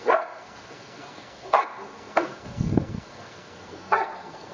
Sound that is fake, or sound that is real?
fake